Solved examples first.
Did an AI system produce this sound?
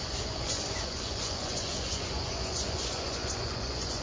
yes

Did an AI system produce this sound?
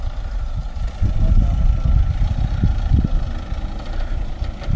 no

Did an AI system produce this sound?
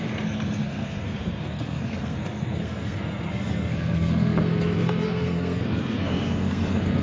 yes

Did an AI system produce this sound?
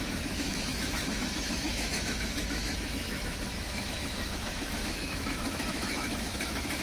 yes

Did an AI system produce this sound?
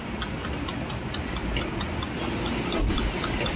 no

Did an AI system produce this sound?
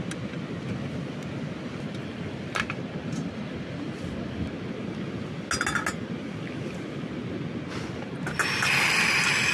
no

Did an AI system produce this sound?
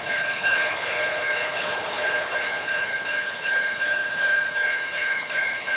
yes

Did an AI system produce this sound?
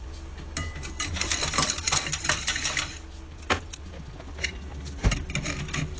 no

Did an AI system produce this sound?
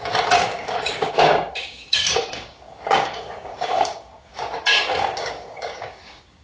yes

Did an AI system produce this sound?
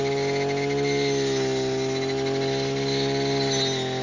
no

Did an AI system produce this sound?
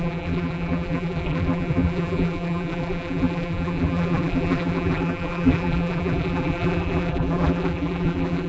yes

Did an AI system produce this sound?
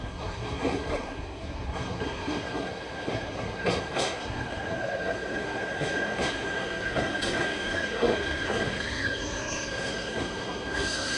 yes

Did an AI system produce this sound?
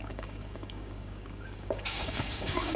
yes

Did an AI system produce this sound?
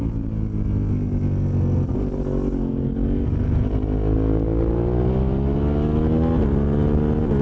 no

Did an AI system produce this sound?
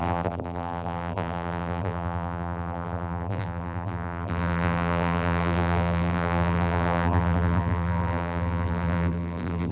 yes